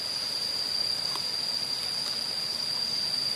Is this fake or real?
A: real